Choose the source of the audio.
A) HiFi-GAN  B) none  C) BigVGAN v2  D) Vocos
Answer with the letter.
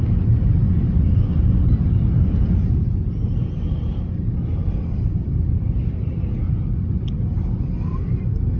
C